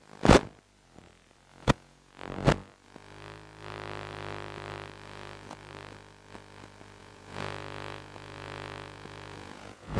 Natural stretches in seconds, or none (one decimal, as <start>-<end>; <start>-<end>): 0.0-1.5; 2.1-7.0